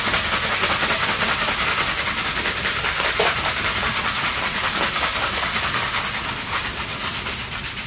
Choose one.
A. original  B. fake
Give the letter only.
A